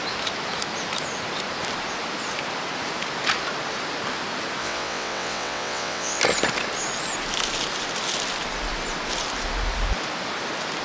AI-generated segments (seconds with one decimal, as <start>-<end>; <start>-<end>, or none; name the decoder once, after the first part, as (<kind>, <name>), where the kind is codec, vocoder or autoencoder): 4.6-6.2 (vocoder, WaveNeXt)